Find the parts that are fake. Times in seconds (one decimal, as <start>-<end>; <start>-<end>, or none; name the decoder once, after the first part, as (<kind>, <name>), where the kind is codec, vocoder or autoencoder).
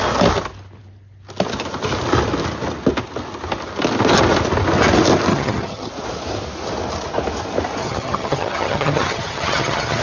5.3-5.9 (vocoder, HiFi-GAN); 7.8-10.0